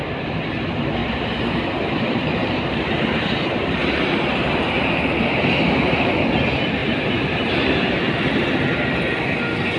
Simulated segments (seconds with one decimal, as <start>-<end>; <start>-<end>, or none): 1.0-1.6; 2.4-5.1; 6.8-8.1